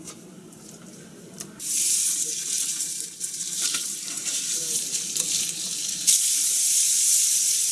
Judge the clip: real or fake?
fake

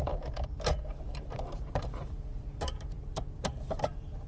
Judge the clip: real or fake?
fake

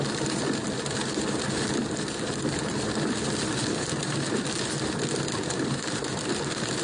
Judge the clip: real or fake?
fake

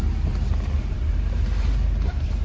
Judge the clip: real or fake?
fake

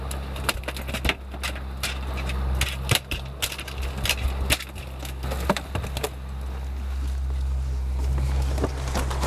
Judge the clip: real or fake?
real